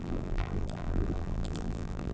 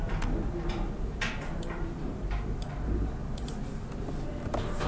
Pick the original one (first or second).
second